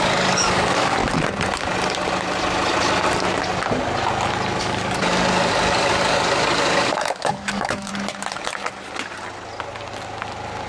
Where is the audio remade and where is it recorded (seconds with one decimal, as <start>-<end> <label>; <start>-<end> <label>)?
0.0-1.0 remade; 1.0-4.6 recorded; 4.6-7.9 remade; 7.9-10.7 recorded